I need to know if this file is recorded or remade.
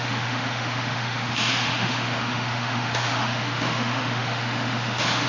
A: remade